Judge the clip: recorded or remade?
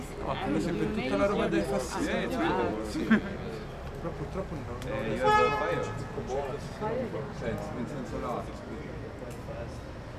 recorded